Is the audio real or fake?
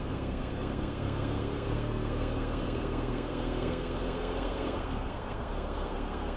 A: fake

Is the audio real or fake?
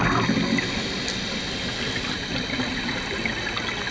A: real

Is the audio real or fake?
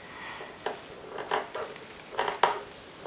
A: real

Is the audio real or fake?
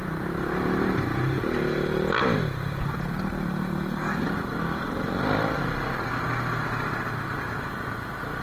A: real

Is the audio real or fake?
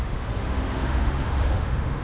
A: fake